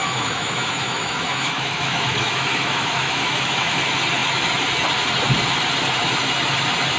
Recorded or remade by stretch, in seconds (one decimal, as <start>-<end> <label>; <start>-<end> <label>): 0.0-3.8 remade; 3.8-7.0 recorded